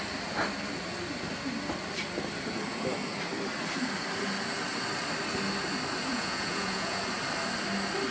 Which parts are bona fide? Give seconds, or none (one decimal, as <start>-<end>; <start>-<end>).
0.0-6.1; 7.0-8.1